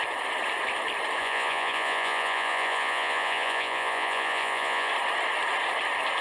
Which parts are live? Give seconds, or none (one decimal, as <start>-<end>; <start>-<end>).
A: 0.0-1.2; 4.9-6.2